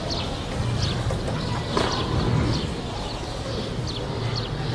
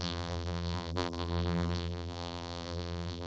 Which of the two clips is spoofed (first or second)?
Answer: second